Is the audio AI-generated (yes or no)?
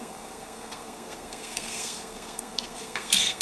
yes